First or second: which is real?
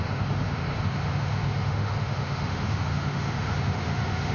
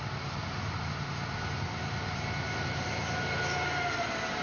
second